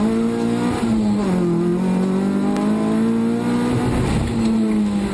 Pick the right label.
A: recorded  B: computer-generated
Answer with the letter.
A